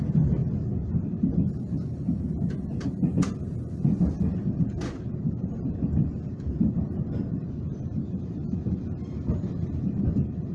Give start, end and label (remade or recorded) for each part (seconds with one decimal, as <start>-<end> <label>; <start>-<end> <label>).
0.0-10.5 recorded